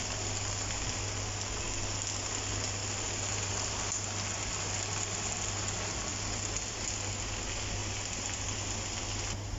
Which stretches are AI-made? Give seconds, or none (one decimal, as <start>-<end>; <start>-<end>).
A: none